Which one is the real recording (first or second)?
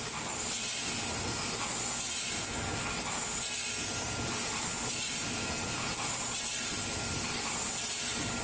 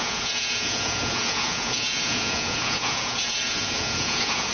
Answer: first